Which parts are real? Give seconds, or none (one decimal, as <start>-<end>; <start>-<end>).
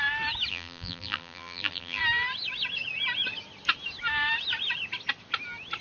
0.0-0.5; 2.0-5.8